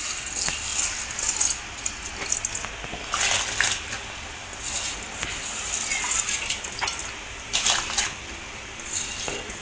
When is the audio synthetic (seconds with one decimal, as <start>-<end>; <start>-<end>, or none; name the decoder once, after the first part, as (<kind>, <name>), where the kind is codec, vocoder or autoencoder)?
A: none